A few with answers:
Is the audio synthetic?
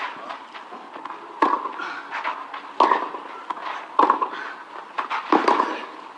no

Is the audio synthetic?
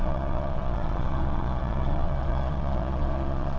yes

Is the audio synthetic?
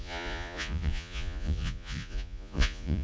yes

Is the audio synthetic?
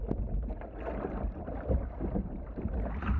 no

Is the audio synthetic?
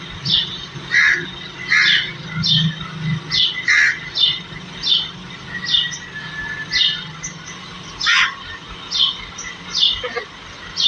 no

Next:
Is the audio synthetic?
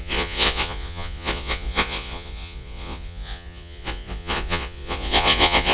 yes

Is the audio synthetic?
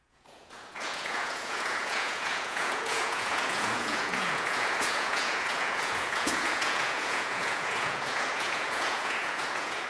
yes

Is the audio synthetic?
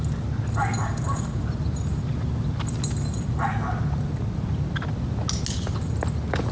no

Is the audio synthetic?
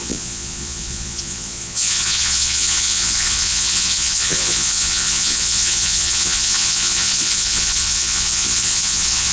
yes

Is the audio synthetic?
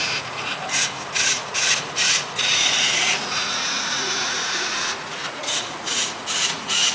yes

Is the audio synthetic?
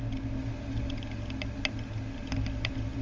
no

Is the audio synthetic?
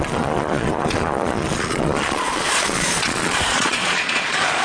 yes